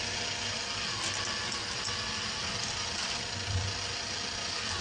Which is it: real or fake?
real